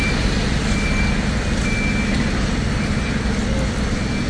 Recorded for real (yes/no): yes